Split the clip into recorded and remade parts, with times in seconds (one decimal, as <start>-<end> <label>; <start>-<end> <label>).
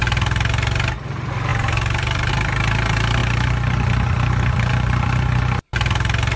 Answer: 0.0-1.5 recorded; 1.5-2.3 remade; 2.3-6.4 recorded